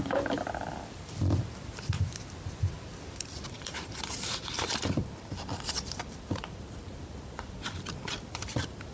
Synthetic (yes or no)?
yes